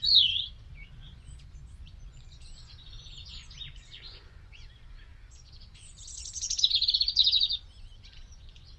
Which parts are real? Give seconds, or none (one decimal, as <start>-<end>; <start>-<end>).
none